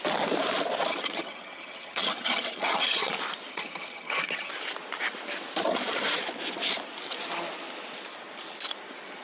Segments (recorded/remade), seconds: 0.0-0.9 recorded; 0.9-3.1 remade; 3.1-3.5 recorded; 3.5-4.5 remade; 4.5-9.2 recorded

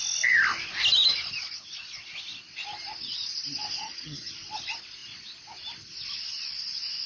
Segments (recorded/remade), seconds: 0.0-3.8 recorded; 3.8-4.3 remade; 4.3-7.1 recorded

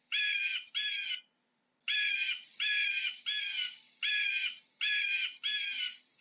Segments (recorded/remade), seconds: 0.0-6.2 recorded

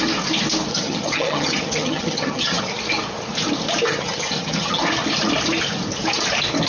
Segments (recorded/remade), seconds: 0.0-0.7 recorded; 0.7-2.6 remade; 2.6-3.9 recorded; 3.9-4.8 remade; 4.8-6.7 recorded

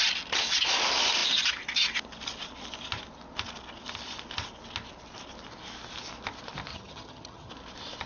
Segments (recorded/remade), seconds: 0.0-6.7 recorded; 6.7-7.5 remade; 7.5-8.1 recorded

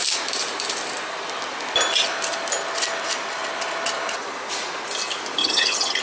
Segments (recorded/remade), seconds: 0.0-5.4 recorded; 5.4-6.0 remade

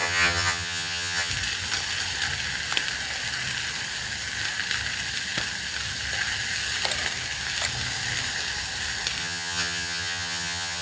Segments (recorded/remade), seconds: 0.0-1.3 remade; 1.3-9.2 recorded; 9.2-10.8 remade

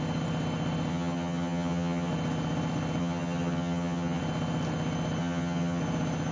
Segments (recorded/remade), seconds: 0.0-0.9 recorded; 0.9-2.1 remade; 2.1-3.0 recorded; 3.0-4.2 remade; 4.2-5.2 recorded; 5.2-5.8 remade; 5.8-6.3 recorded